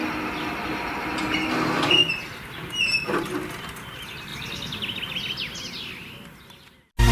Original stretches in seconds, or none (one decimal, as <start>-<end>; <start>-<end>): 0.0-7.1